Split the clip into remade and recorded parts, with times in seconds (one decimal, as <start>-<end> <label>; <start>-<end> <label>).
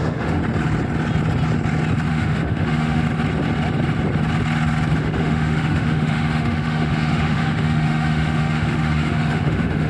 0.0-0.4 remade; 0.4-2.1 recorded; 2.1-3.0 remade; 3.0-5.0 recorded; 5.0-9.9 remade